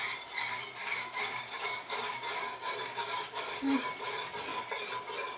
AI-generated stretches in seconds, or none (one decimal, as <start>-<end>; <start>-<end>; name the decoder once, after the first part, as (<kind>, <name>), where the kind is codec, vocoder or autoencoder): 0.8-4.0 (codec, DAC)